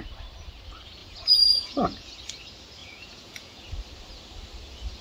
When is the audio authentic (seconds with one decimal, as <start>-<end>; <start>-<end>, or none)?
0.0-1.0; 2.1-2.8; 3.6-5.0